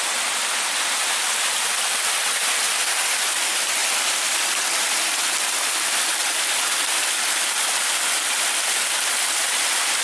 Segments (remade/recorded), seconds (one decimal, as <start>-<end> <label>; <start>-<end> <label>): 0.0-10.0 recorded